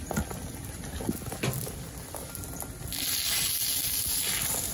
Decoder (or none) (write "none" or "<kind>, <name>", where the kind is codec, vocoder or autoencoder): none